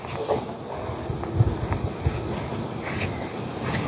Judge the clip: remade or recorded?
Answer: recorded